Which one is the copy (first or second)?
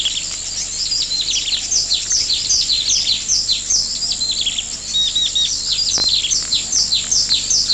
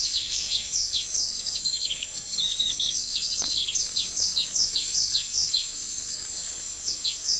second